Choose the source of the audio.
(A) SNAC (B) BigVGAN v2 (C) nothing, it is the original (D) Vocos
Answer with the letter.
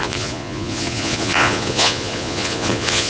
D